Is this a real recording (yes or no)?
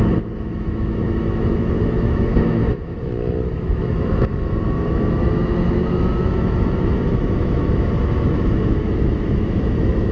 no